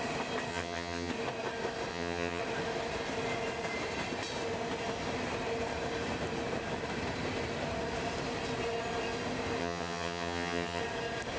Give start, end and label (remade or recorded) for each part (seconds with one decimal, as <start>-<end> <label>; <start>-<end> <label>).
0.0-0.5 recorded; 0.5-1.1 remade; 1.1-1.9 recorded; 1.9-2.4 remade; 2.4-9.6 recorded; 9.6-10.8 remade; 10.8-11.4 recorded